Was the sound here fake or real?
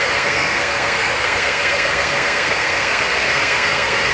fake